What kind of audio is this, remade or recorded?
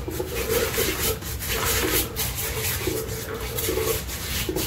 recorded